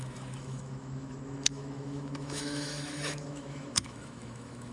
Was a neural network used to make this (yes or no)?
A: yes